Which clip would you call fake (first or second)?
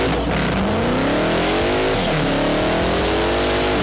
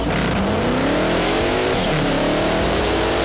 second